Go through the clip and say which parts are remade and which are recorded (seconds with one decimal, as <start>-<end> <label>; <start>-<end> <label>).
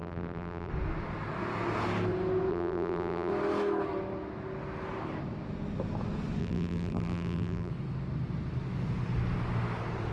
0.0-0.7 remade; 0.7-2.5 recorded; 2.5-3.3 remade; 3.3-6.4 recorded; 6.4-7.7 remade; 7.7-10.1 recorded